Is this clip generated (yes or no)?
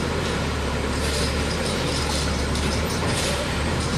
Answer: yes